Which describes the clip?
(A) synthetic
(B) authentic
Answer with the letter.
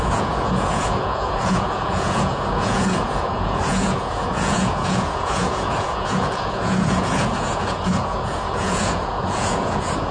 A